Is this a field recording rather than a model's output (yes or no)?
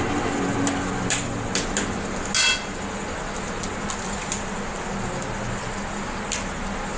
yes